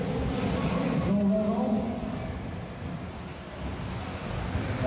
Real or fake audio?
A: real